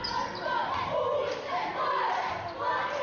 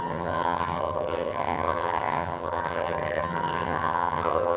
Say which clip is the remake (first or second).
second